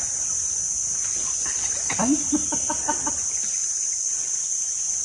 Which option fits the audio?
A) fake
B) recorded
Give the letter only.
B